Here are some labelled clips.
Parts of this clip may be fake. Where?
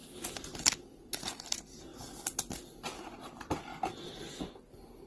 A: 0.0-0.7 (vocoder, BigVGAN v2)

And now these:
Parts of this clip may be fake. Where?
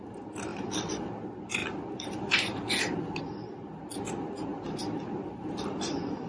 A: 0.5-1.1 (vocoder, BigVGAN v2); 1.6-3.2; 4.5-5.5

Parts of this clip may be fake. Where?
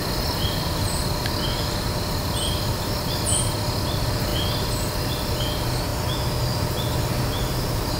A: none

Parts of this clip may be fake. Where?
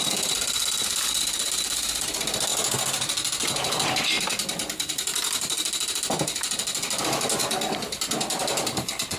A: 0.0-2.5 (vocoder, BigVGAN v2); 7.0-7.4; 8.4-9.2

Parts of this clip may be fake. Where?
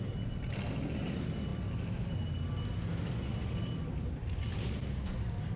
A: 0.0-1.5 (vocoder, BigVGAN v2); 3.1-5.6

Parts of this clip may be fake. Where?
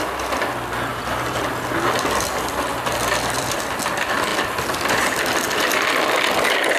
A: 0.9-1.7 (vocoder, BigVGAN v2); 2.7-3.7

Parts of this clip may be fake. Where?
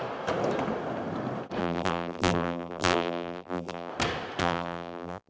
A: 1.6-3.9 (vocoder, BigVGAN v2); 4.4-5.3